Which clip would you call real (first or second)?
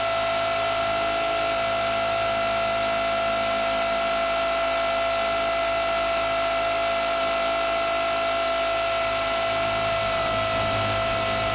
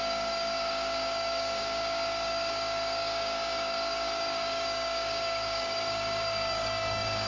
first